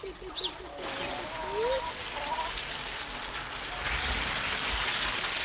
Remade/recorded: recorded